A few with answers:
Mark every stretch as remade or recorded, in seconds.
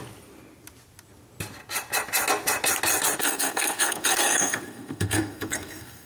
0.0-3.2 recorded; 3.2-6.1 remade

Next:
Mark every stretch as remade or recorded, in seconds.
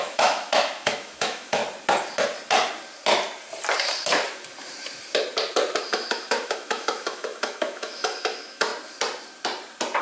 0.0-1.6 remade; 1.6-5.8 recorded; 5.8-8.7 remade; 8.7-10.0 recorded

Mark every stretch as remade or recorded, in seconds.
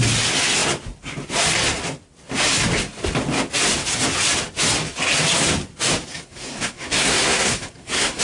0.0-6.1 recorded; 6.1-8.2 remade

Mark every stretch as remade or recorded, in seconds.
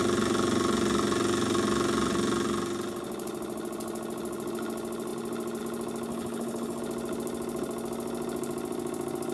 0.0-6.1 recorded; 6.1-6.8 remade; 6.8-9.3 recorded